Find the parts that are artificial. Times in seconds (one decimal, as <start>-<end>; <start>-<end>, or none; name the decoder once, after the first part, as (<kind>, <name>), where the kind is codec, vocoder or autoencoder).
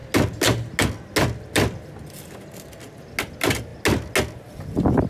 none